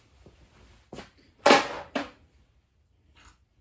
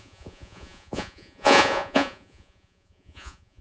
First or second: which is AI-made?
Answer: second